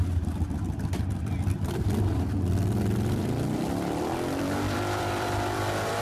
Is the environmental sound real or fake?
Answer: fake